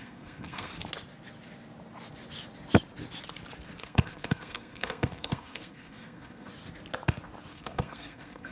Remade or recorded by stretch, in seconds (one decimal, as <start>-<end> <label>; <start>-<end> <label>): 0.0-0.7 remade; 0.7-3.8 recorded; 3.8-6.5 remade; 6.5-7.5 recorded; 7.5-8.5 remade